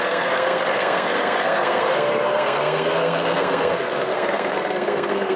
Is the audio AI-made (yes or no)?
yes